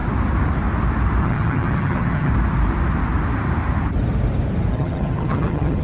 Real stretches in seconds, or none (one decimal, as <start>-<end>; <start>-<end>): 0.0-1.2; 2.3-4.7

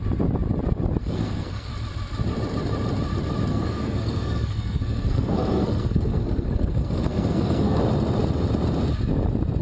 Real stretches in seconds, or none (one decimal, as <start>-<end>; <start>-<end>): 0.0-1.0; 1.7-3.5; 7.8-9.6

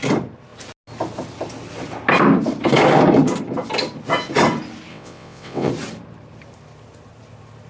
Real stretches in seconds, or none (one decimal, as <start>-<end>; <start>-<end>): 0.0-4.9; 5.7-7.7

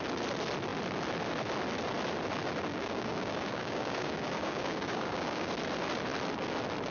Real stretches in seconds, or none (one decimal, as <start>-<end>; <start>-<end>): 0.0-2.7; 5.5-6.9

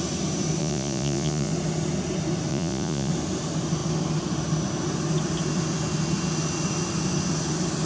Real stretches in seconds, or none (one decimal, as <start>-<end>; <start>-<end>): 0.0-0.6; 1.5-2.5; 3.1-7.9

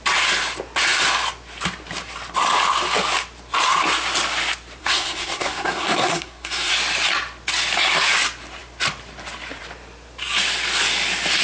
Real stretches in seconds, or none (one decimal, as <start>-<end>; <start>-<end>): 0.0-4.8; 6.7-11.4